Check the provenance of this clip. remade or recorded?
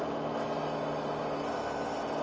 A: recorded